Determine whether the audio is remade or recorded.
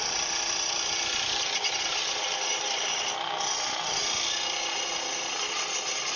recorded